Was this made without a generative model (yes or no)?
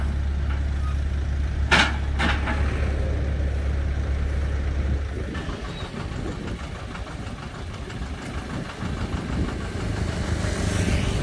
yes